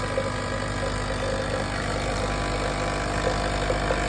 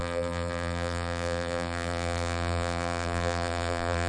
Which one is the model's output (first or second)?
second